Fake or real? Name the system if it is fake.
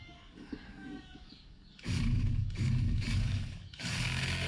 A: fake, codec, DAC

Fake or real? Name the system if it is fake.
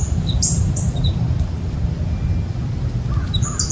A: real